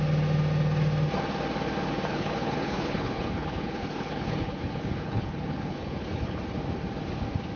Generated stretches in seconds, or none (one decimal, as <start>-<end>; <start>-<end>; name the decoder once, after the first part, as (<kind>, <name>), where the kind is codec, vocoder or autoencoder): 2.1-6.4 (codec, HILCodec)